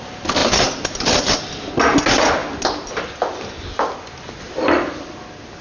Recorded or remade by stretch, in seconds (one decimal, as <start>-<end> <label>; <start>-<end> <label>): 0.0-5.6 recorded